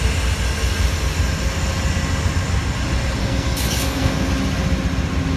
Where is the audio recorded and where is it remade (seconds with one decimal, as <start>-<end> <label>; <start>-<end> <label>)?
0.0-3.2 recorded; 3.2-4.3 remade; 4.3-5.4 recorded